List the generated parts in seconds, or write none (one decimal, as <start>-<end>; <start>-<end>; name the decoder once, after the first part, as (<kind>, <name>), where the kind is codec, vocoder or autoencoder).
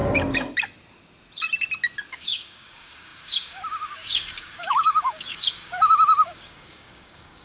2.1-7.4 (codec, DAC)